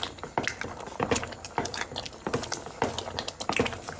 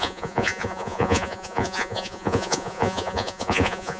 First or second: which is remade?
second